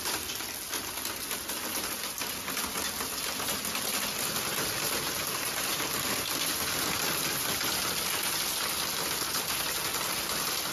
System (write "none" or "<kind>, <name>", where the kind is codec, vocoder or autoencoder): none